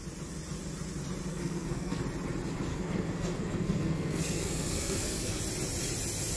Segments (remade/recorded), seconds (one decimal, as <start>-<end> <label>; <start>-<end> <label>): 0.0-1.3 recorded; 1.3-2.0 remade; 2.0-2.7 recorded; 2.7-5.4 remade; 5.4-6.4 recorded